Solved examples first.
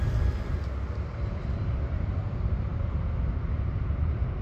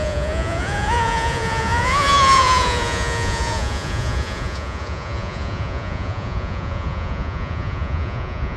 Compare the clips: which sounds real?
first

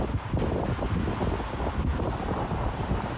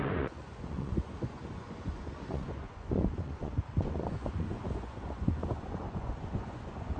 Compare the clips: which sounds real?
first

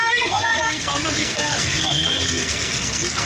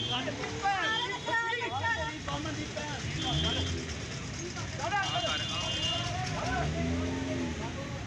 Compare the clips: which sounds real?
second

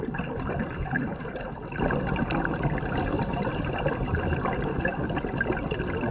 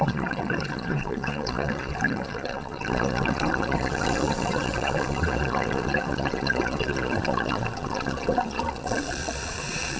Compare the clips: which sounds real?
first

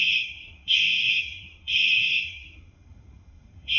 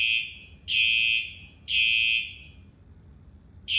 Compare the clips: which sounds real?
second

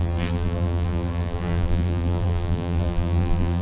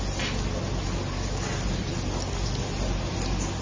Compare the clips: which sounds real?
second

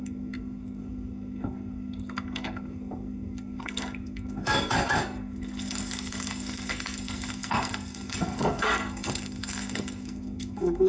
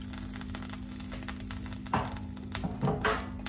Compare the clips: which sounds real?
second